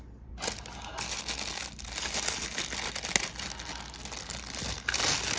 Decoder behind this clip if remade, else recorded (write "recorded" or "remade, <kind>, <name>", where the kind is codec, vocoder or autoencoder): recorded